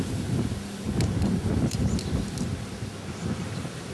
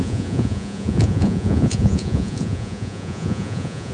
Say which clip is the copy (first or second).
second